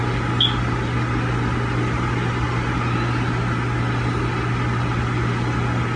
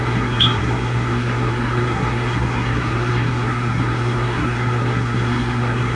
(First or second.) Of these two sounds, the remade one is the second